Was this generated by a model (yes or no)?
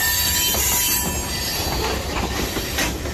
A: no